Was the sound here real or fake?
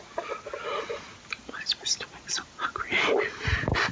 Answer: real